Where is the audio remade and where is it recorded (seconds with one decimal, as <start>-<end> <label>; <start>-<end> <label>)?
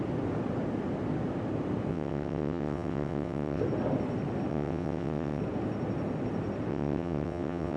0.0-1.9 recorded; 1.9-3.6 remade; 3.6-4.5 recorded; 4.5-5.4 remade; 5.4-6.7 recorded; 6.7-7.8 remade